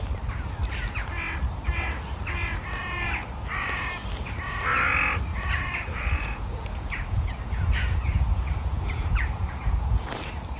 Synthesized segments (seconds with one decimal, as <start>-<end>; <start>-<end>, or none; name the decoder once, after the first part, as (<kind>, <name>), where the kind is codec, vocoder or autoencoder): 5.3-10.0 (vocoder, Vocos)

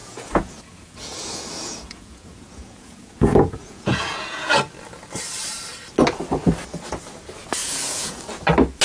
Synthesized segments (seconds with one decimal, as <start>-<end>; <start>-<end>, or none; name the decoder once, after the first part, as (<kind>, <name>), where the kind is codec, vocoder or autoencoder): 0.0-4.5 (vocoder, Vocos); 7.6-8.2

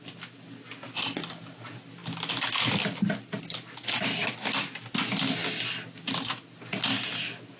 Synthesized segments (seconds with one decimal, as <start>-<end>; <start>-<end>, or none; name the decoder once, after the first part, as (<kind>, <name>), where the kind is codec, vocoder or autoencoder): none

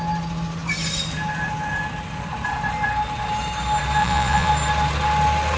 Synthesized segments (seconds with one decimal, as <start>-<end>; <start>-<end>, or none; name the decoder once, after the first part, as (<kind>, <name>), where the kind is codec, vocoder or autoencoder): 4.0-4.5 (vocoder, Vocos)

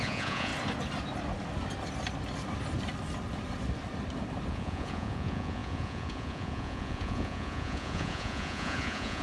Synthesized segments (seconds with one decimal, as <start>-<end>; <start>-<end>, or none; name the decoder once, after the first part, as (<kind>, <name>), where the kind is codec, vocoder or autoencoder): 0.0-0.5 (vocoder, Vocos); 4.5-9.2

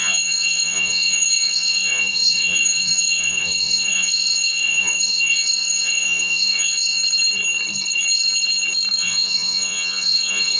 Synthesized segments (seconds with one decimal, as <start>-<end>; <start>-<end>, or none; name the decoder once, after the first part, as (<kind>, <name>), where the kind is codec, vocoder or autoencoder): 0.0-7.0 (vocoder, Vocos); 9.0-10.6

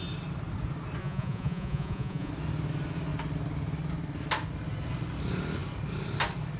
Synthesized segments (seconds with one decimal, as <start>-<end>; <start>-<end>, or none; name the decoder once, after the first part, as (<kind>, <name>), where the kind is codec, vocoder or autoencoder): 1.0-2.3 (vocoder, Vocos)